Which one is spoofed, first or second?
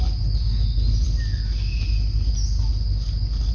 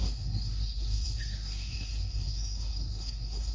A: second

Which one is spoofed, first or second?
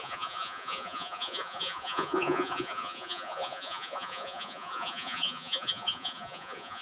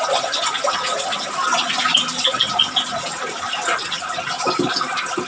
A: first